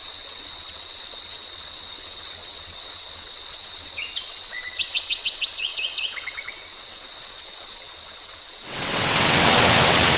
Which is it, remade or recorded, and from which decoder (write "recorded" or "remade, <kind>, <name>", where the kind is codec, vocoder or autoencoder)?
remade, vocoder, WaveNeXt